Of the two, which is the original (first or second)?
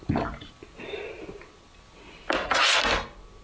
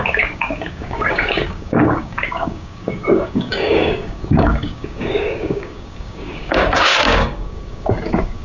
first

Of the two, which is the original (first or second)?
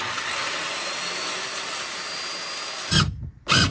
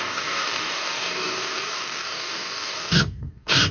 first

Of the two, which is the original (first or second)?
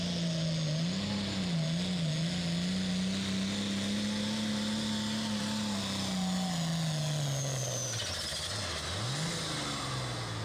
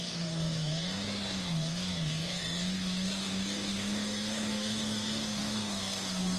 first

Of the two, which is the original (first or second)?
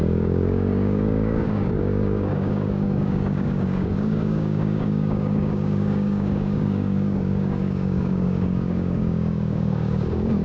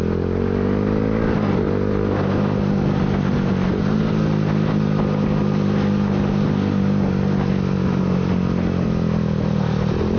second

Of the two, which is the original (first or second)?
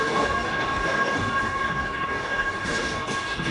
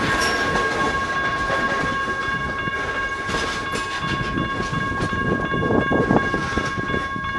second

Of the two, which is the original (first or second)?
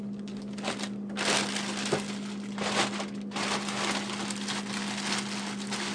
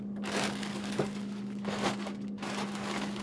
first